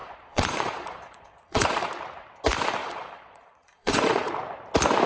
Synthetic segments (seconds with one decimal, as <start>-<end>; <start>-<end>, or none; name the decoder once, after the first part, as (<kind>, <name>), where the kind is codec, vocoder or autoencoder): 0.0-1.9 (vocoder, Vocos); 2.8-4.3